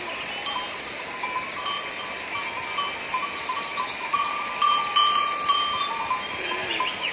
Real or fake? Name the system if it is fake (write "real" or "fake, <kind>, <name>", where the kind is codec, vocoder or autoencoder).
real